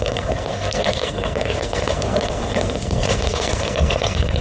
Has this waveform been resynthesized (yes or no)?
yes